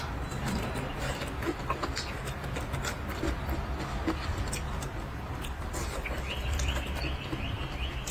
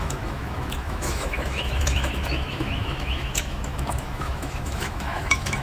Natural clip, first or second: first